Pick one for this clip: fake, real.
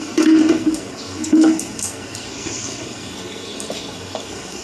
fake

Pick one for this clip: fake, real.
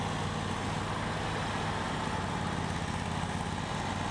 real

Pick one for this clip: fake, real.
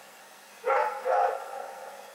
fake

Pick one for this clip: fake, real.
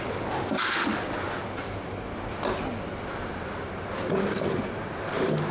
real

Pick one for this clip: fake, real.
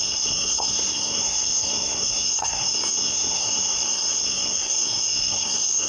fake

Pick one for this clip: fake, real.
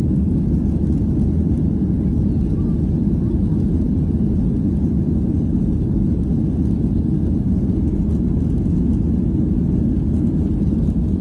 real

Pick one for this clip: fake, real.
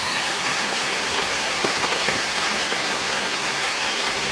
fake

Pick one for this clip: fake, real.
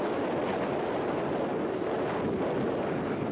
real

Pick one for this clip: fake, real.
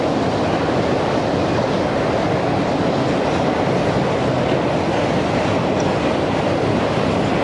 real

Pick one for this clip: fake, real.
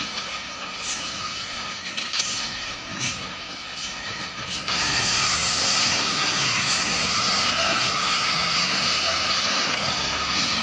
fake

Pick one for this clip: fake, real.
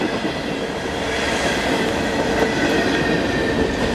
real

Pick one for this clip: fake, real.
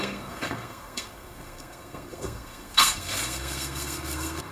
fake